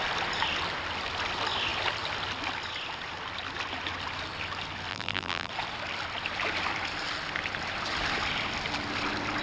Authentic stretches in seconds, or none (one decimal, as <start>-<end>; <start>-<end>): 0.0-4.9; 5.5-9.4